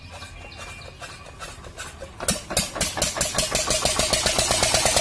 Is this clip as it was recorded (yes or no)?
yes